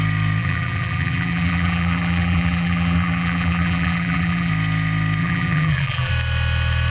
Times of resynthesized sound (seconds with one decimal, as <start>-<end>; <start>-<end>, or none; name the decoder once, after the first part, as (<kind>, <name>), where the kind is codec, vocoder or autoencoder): 0.4-4.5 (vocoder, BigVGAN v2); 5.2-6.1